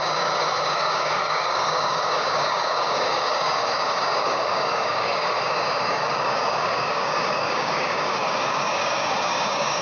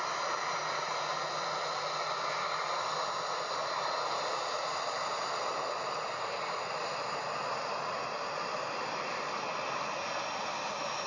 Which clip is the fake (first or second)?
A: first